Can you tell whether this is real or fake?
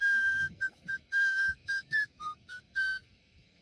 fake